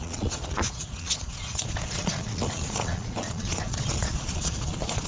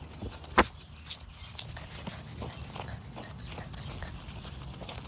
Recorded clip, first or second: second